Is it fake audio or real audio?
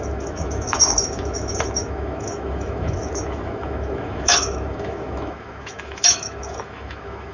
fake